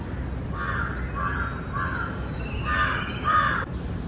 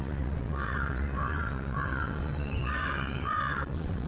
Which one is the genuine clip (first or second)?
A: first